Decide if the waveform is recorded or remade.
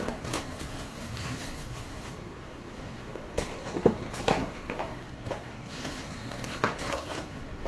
remade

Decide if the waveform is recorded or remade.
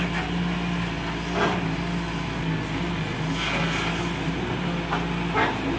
recorded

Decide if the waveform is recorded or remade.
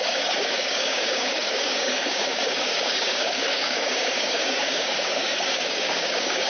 remade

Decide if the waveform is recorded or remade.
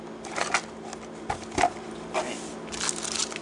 recorded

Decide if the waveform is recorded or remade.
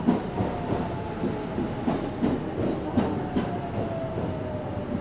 recorded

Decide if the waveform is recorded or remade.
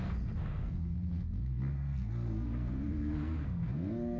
remade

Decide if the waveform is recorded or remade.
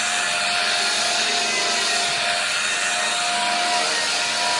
recorded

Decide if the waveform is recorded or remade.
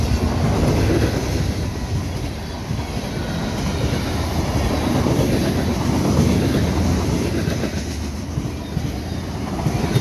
recorded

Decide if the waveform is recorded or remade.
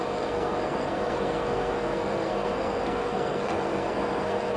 remade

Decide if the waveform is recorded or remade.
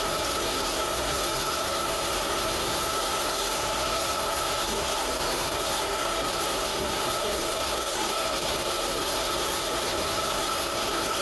remade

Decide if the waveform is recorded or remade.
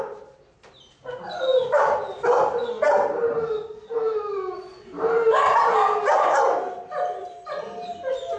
recorded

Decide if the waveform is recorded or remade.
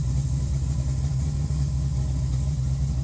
recorded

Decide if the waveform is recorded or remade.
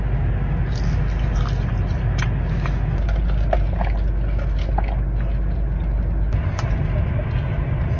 recorded